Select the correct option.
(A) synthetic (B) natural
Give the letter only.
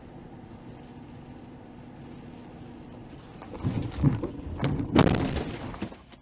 B